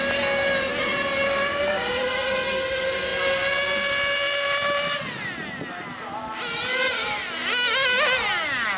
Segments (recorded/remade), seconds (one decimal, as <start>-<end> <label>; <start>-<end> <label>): 0.0-8.8 recorded